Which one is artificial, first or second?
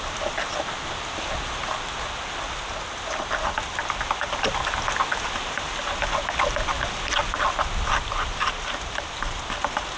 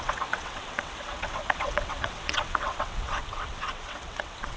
second